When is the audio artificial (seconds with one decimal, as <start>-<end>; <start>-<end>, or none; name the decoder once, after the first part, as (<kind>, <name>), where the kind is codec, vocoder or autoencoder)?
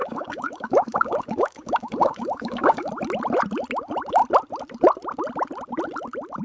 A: 0.0-2.9 (codec, DAC)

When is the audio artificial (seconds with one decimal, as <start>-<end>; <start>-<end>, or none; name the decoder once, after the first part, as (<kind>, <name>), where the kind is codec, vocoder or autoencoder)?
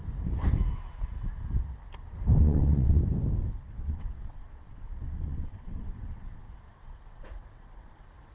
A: 2.4-3.0 (vocoder, WaveNeXt); 3.7-8.3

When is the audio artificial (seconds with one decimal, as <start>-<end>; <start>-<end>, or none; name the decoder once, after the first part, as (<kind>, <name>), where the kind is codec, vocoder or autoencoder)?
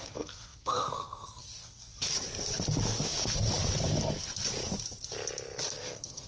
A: 0.0-1.9 (codec, SNAC); 5.7-6.3